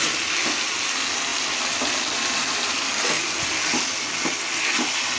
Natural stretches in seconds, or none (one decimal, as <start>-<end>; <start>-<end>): 0.0-5.2